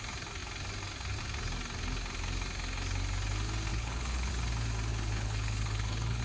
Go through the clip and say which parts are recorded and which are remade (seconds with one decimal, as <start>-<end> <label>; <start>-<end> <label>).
0.0-3.7 recorded; 3.7-4.3 remade; 4.3-4.9 recorded; 4.9-6.2 remade